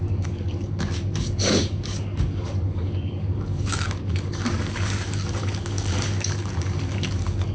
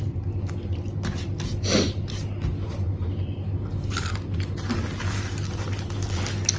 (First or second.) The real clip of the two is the second